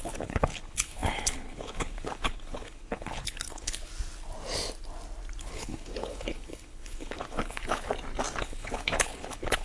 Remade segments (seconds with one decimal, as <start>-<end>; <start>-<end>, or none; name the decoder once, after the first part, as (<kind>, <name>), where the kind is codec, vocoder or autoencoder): 0.0-3.9 (codec, HILCodec); 5.4-7.9; 8.4-9.6

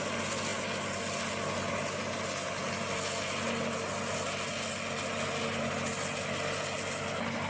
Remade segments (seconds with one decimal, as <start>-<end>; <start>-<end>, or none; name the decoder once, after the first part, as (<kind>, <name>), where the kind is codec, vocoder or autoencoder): none

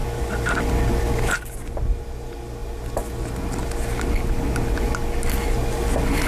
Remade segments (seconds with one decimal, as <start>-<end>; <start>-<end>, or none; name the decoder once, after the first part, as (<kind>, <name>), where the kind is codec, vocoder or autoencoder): none

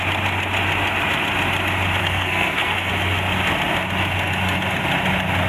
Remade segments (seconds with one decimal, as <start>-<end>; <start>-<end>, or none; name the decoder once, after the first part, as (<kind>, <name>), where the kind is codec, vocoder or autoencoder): 2.0-2.9 (codec, SNAC)

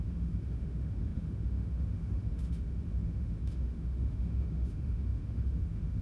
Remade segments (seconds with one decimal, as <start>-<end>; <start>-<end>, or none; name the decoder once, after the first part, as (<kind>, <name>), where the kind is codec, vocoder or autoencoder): 0.0-6.0 (autoencoder, DAC-VAE)

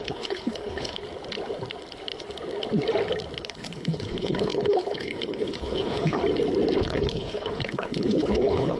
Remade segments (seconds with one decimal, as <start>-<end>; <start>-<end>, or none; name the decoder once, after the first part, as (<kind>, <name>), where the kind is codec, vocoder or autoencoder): 0.0-1.0 (codec, HILCodec); 3.4-6.2; 6.8-8.8

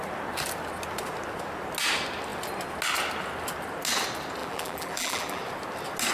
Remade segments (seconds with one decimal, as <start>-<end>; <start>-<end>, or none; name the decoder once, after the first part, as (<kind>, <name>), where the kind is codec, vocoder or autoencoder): 4.4-5.4 (vocoder, BigVGAN v2)

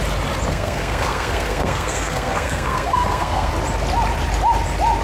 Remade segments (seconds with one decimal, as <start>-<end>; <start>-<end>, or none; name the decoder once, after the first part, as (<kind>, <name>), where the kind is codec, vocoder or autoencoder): 0.5-3.5 (codec, SNAC)